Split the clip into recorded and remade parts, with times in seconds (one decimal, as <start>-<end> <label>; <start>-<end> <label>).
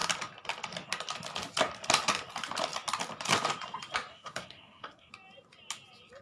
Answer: 0.0-4.1 recorded; 4.1-5.1 remade; 5.1-6.2 recorded